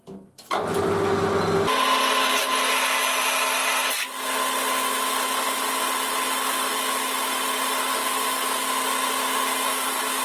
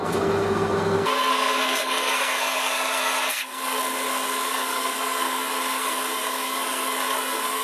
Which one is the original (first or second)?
first